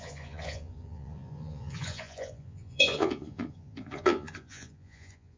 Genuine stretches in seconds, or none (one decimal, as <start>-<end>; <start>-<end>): none